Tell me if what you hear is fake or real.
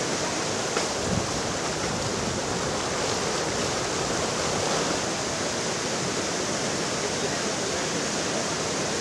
real